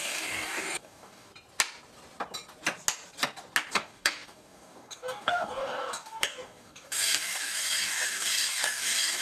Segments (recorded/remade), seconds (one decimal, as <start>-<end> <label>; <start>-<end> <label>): 0.0-1.3 remade; 1.3-3.7 recorded; 3.7-9.2 remade